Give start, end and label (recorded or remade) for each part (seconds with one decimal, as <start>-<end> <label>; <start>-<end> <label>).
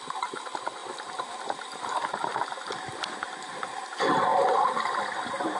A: 0.0-5.6 recorded